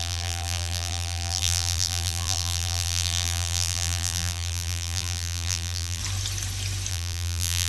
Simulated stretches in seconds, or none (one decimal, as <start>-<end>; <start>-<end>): 0.0-6.0; 6.9-7.7